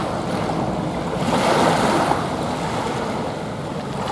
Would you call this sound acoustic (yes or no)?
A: yes